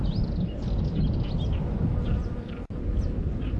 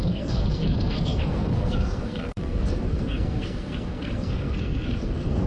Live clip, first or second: first